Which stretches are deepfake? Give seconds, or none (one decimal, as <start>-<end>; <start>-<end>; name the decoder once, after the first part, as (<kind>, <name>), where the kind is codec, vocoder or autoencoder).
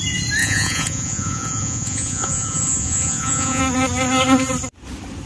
0.4-3.6 (vocoder, Vocos)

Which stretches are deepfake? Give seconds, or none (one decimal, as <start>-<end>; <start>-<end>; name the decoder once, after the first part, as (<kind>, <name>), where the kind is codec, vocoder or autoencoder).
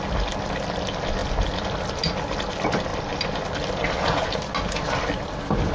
2.9-4.2 (vocoder, BigVGAN v2)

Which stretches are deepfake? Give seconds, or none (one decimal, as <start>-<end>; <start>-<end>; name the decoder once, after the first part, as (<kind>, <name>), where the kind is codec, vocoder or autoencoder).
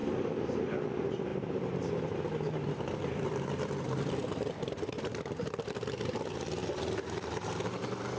1.3-5.5 (vocoder, BigVGAN v2); 6.6-8.2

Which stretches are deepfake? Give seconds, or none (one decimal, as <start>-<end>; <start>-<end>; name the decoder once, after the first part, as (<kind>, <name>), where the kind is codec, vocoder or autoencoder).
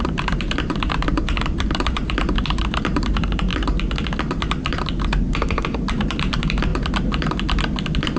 0.0-3.5 (vocoder, BigVGAN v2); 5.2-6.7